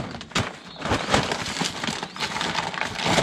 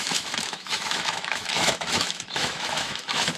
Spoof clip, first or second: second